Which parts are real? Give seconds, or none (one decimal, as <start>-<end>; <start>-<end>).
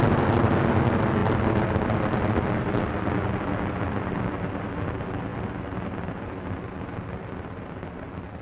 0.0-8.4